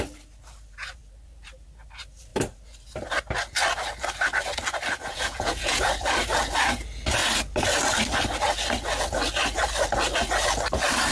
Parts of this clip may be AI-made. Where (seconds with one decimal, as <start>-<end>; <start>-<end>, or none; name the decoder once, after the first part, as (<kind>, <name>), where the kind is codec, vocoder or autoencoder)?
5.0-5.9 (vocoder, Vocos)